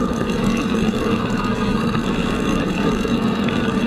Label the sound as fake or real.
fake